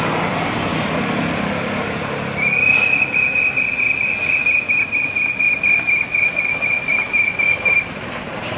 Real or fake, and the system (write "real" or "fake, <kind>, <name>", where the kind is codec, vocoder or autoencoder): real